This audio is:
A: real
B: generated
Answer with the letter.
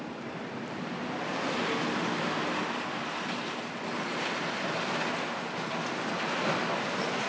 A